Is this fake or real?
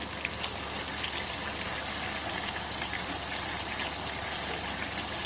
real